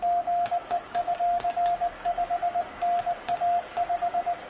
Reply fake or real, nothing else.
fake